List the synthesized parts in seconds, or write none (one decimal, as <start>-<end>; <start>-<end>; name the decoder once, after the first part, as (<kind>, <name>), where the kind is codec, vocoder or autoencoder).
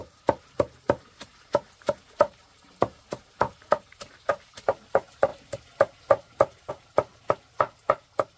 0.0-4.3 (vocoder, BigVGAN v2); 5.3-6.7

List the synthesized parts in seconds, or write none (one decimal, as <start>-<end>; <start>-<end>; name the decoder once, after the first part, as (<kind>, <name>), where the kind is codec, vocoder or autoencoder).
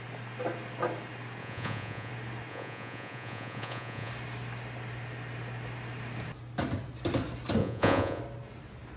1.4-2.1 (vocoder, Vocos); 2.5-4.1; 7.6-8.2